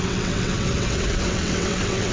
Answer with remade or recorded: remade